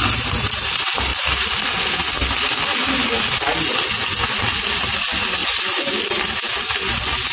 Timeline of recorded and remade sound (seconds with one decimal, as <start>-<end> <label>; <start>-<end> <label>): 0.0-7.3 recorded